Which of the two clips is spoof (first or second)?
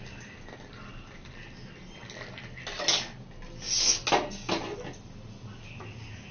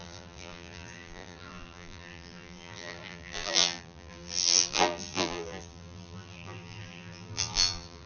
second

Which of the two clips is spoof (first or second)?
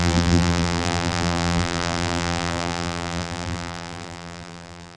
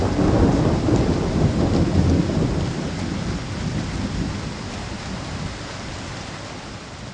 first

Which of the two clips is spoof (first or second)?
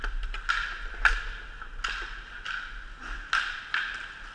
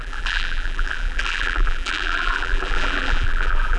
second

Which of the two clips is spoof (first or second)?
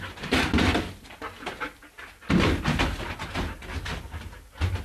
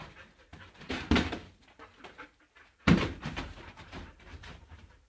second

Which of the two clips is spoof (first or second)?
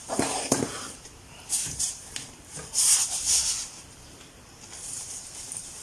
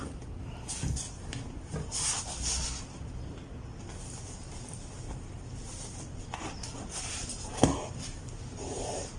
first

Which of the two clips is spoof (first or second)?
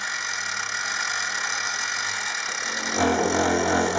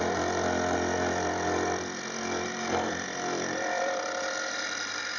second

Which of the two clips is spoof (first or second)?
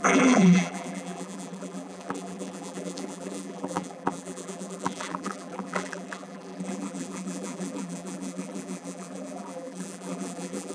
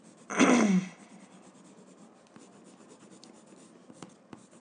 first